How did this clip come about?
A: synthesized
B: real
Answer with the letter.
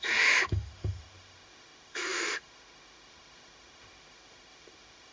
A